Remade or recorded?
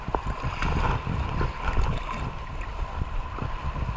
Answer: recorded